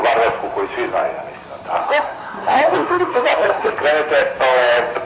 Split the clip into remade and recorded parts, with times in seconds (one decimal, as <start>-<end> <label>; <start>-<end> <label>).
0.0-1.8 recorded; 1.8-3.7 remade; 3.7-5.0 recorded